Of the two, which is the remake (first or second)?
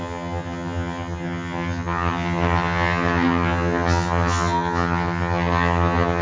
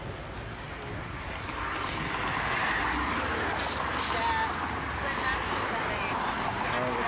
first